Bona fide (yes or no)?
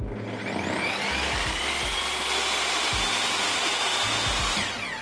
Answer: yes